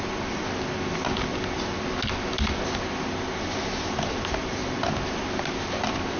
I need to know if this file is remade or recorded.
recorded